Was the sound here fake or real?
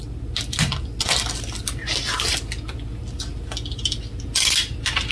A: real